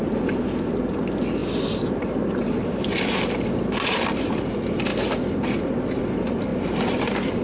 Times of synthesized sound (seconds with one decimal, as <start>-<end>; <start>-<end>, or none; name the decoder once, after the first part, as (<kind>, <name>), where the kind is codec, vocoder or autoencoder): none